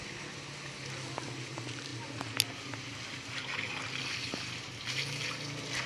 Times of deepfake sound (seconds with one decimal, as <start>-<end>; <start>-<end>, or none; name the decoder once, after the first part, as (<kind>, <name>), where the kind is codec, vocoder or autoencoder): none